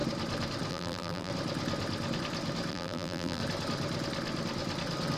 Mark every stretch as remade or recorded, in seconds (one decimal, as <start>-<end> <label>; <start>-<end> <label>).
0.0-0.7 recorded; 0.7-1.3 remade; 1.3-2.7 recorded; 2.7-3.4 remade; 3.4-5.2 recorded